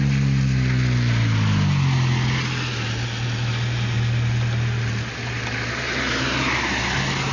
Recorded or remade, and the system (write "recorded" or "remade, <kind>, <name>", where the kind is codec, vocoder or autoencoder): recorded